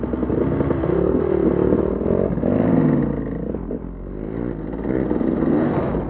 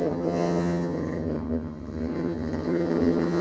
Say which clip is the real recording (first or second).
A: first